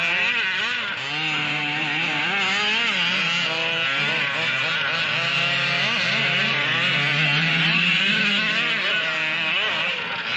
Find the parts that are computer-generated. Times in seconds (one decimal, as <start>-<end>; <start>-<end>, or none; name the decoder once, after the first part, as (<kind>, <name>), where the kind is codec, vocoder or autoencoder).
7.5-8.2 (vocoder, Vocos)